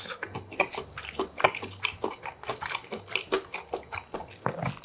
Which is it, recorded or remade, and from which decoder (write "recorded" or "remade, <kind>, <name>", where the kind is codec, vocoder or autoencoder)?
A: recorded